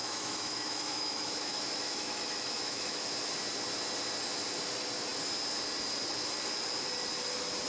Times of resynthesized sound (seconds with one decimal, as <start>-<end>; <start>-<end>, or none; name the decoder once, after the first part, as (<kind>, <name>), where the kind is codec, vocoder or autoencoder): 0.0-3.1 (autoencoder, DAC-VAE)